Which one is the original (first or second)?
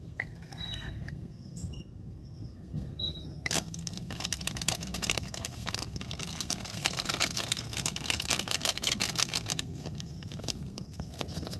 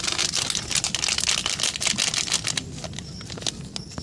second